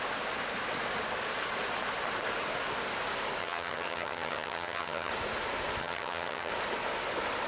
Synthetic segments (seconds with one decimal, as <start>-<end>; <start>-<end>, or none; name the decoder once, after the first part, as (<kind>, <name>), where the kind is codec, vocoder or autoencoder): 3.4-5.1 (vocoder, HiFi-GAN); 5.8-6.5